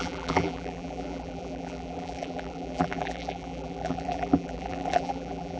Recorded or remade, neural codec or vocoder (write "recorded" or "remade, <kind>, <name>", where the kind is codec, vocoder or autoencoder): remade, vocoder, BigVGAN v2